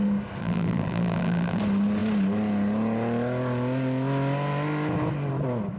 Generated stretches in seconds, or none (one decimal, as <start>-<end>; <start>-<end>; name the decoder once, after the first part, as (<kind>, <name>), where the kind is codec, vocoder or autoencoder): 0.4-1.6 (vocoder, BigVGAN v2)